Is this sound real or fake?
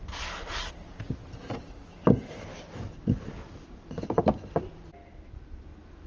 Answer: real